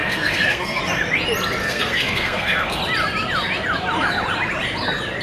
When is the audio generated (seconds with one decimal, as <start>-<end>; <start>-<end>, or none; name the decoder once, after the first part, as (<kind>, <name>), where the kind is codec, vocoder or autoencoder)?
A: 0.0-0.8 (codec, SNAC); 1.6-2.8